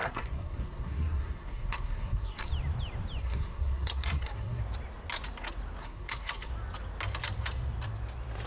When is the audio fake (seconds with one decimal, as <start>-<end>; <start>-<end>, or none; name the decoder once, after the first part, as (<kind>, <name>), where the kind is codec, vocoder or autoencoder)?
0.0-2.5 (codec, SNAC); 3.2-4.6; 5.8-6.5